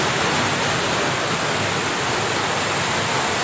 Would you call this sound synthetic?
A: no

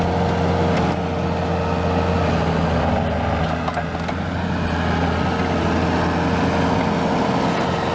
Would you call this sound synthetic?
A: no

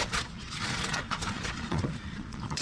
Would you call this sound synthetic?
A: yes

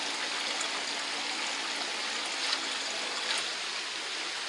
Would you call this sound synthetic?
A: no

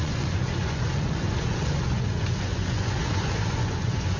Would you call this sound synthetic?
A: yes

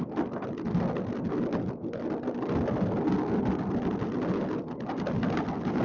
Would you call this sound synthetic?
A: no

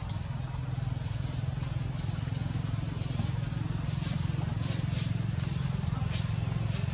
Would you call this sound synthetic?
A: no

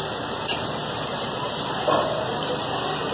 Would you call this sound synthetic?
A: no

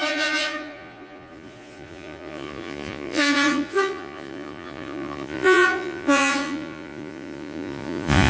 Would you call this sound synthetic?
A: yes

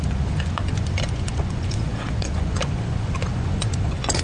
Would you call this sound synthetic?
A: yes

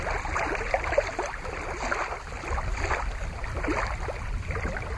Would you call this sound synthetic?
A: no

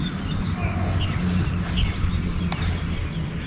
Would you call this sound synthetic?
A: no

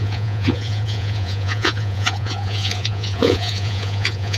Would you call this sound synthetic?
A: yes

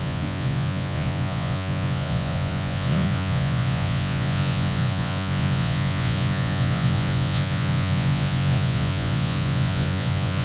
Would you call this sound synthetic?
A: yes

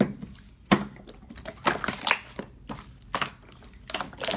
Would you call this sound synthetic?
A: no